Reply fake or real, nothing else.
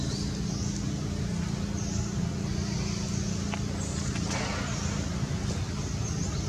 real